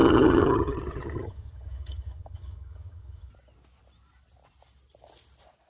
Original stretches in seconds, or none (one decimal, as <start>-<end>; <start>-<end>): 3.3-5.7